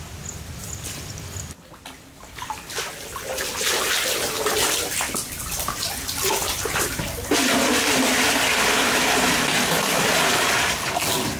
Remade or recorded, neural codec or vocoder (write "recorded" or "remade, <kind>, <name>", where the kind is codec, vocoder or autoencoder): recorded